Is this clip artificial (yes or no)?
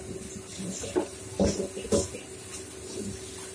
no